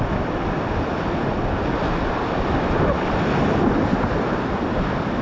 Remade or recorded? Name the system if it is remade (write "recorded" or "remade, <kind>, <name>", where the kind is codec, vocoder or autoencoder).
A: recorded